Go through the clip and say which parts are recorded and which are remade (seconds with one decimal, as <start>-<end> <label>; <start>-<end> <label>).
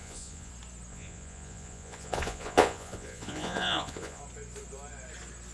0.0-0.5 remade; 0.5-0.9 recorded; 0.9-4.2 remade; 4.2-5.5 recorded